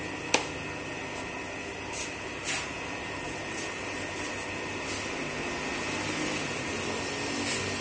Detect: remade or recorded recorded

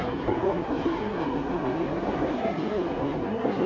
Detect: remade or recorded remade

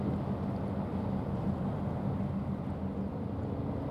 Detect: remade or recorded recorded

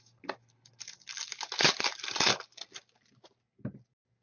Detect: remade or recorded recorded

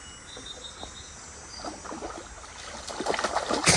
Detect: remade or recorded recorded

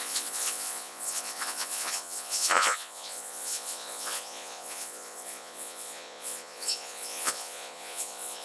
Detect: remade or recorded remade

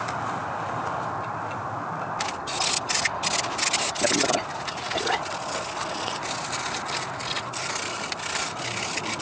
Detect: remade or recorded recorded